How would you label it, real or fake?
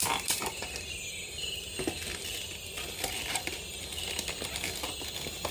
real